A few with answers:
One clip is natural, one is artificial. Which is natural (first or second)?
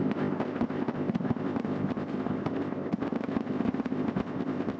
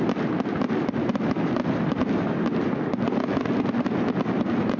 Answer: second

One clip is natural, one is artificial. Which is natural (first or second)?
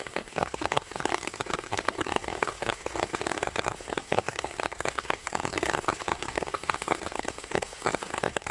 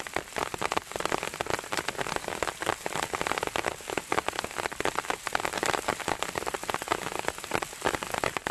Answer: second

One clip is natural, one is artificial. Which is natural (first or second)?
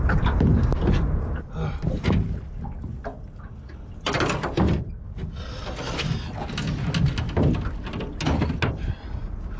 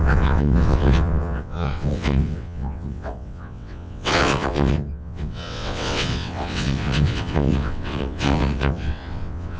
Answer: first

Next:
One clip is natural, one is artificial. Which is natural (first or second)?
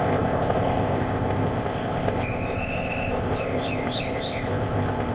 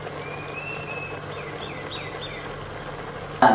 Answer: second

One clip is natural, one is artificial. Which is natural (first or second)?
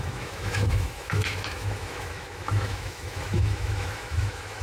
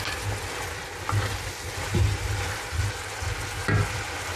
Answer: second